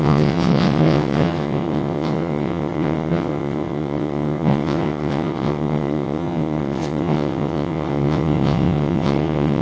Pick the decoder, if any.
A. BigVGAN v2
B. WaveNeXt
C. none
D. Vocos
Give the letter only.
B